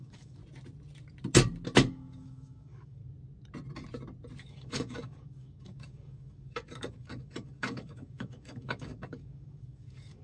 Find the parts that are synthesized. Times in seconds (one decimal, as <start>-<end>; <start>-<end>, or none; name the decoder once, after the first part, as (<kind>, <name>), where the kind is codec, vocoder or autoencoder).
0.0-0.4 (codec, DAC); 1.9-3.0; 4.4-10.2